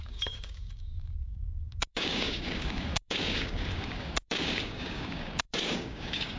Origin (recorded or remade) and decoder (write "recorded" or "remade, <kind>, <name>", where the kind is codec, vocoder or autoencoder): remade, codec, DAC